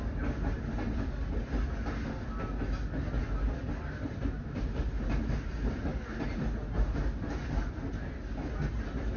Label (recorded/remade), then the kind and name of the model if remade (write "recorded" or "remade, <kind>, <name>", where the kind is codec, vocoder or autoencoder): recorded